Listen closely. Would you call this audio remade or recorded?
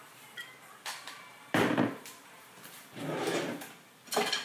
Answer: remade